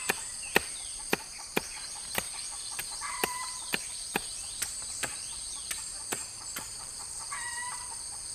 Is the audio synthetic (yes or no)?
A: yes